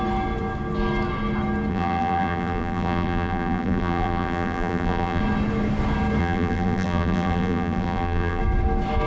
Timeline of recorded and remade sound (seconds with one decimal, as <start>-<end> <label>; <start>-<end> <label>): 0.0-1.7 recorded; 1.7-5.2 remade; 5.2-6.2 recorded; 6.2-8.4 remade; 8.4-9.1 recorded